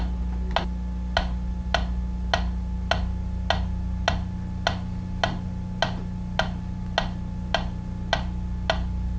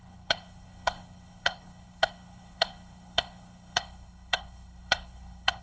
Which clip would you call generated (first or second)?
second